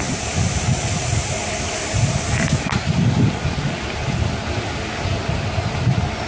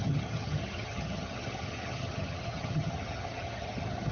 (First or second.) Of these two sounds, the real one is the first